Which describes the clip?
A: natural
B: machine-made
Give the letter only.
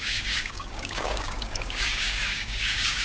B